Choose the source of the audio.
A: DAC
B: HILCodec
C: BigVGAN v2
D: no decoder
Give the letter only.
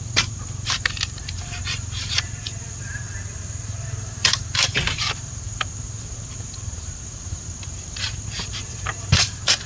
C